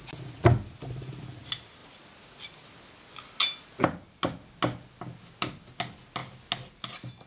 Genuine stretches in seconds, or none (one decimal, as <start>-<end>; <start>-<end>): 0.0-7.3